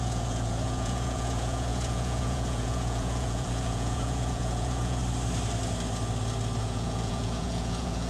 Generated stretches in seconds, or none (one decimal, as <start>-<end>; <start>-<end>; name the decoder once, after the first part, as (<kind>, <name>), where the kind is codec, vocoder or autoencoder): 0.0-5.0 (vocoder, Vocos); 6.6-8.1